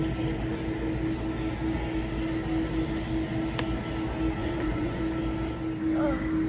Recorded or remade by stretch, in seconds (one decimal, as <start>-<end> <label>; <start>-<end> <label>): 0.0-4.4 recorded; 4.4-5.0 remade; 5.0-6.5 recorded

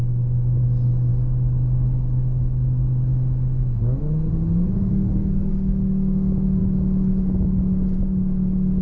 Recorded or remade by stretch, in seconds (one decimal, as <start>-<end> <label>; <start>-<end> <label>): 0.0-4.9 recorded; 4.9-5.5 remade; 5.5-8.8 recorded

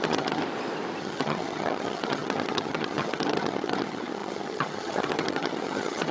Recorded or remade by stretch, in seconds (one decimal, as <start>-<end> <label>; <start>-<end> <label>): 0.0-0.4 remade; 0.4-1.0 recorded; 1.0-6.1 remade

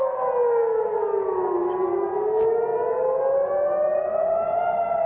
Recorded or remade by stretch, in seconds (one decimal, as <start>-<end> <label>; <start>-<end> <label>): 0.0-5.1 recorded